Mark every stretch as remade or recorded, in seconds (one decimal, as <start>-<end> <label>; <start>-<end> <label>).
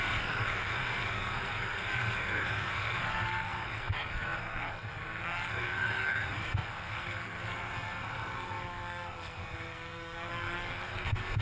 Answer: 0.0-11.4 remade